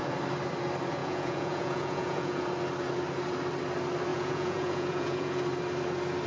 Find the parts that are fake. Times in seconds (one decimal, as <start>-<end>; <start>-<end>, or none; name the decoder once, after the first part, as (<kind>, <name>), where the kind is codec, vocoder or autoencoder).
1.0-2.4 (vocoder, Vocos); 4.1-5.4